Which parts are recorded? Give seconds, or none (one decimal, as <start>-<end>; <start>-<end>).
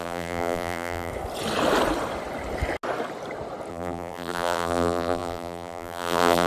1.1-3.7